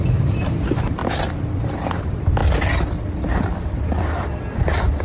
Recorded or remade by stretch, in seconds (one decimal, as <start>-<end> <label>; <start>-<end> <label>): 0.0-1.0 remade; 1.0-1.6 recorded; 1.6-2.4 remade; 2.4-5.0 recorded